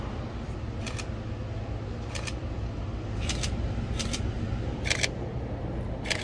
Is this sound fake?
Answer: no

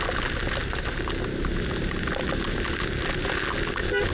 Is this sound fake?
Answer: no